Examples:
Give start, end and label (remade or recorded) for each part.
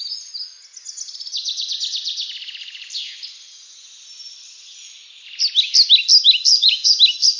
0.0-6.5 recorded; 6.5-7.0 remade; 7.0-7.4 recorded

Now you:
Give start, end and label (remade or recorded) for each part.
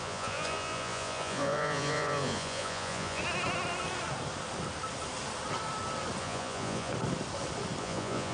0.0-3.2 remade; 3.2-6.2 recorded; 6.2-6.9 remade; 6.9-7.8 recorded; 7.8-8.3 remade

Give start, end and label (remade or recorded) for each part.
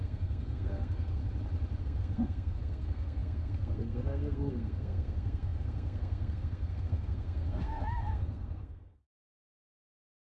0.0-1.2 remade; 1.2-1.8 recorded; 1.8-10.3 remade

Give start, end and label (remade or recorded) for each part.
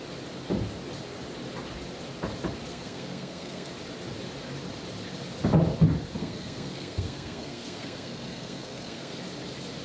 0.0-2.7 recorded; 2.7-3.7 remade; 3.7-6.2 recorded; 6.2-9.2 remade; 9.2-9.8 recorded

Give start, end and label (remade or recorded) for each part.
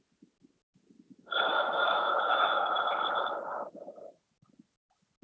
0.0-1.5 recorded; 1.5-2.8 remade; 2.8-5.2 recorded